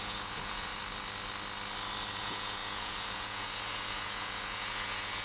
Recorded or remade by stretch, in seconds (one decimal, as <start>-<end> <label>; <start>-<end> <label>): 0.0-0.7 remade; 0.7-2.2 recorded; 2.2-5.2 remade